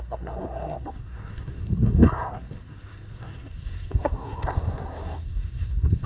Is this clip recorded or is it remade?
remade